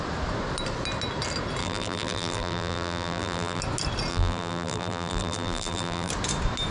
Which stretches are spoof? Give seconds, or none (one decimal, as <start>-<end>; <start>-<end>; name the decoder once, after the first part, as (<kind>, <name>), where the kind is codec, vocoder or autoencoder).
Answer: 1.6-3.6 (vocoder, BigVGAN v2); 4.1-6.1